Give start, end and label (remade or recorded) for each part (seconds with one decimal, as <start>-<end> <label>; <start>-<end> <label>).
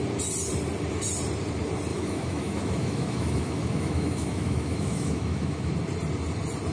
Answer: 0.0-1.9 recorded; 1.9-5.7 remade; 5.7-6.7 recorded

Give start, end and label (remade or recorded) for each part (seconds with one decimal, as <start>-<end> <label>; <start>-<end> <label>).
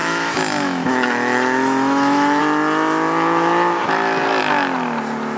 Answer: 0.0-2.4 remade; 2.4-5.4 recorded